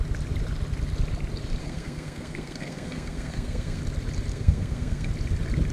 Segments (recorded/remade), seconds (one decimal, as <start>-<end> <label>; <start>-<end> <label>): 0.0-1.6 recorded; 1.6-3.8 remade; 3.8-4.3 recorded; 4.3-5.1 remade; 5.1-5.7 recorded